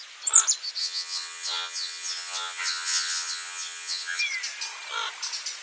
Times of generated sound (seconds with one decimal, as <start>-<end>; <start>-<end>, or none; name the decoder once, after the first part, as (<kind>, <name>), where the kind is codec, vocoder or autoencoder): 0.8-4.2 (vocoder, HiFi-GAN)